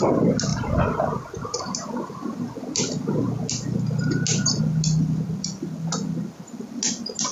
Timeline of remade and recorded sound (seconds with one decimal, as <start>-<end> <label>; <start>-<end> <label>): 0.0-7.3 recorded